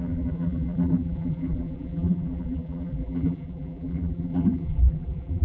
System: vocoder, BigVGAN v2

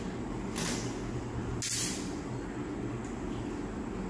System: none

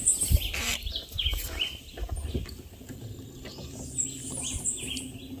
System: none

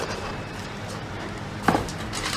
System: vocoder, BigVGAN v2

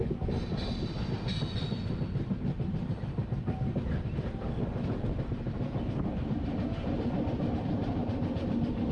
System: none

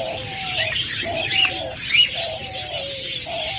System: vocoder, BigVGAN v2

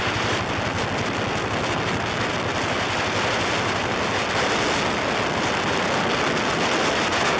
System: none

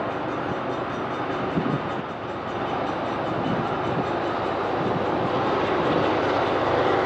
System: none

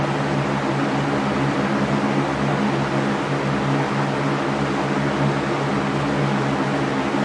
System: none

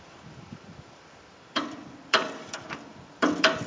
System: vocoder, BigVGAN v2